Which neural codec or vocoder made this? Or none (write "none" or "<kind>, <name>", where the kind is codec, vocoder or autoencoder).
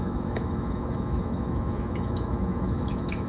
autoencoder, DAC-VAE